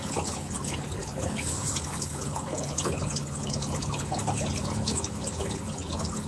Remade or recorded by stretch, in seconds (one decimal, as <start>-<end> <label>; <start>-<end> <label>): 0.0-6.3 remade